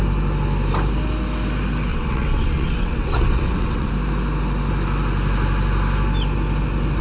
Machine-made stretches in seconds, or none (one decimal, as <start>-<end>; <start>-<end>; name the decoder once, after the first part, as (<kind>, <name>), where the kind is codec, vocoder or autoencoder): 1.9-3.9 (vocoder, WaveNeXt)